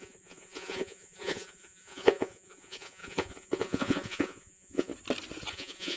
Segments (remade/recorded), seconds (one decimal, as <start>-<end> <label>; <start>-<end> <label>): 0.0-4.9 remade; 4.9-5.5 recorded; 5.5-6.0 remade